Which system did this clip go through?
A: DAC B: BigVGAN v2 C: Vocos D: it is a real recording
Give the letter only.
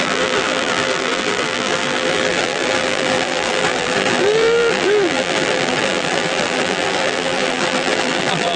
B